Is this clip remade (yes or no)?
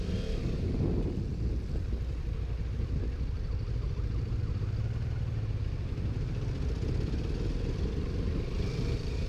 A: no